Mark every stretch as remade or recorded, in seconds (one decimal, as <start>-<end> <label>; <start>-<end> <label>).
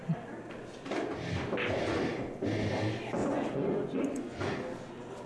0.0-3.2 recorded; 3.2-4.4 remade; 4.4-5.3 recorded